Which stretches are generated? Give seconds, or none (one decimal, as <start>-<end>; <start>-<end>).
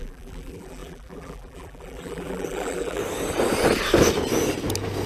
0.0-3.0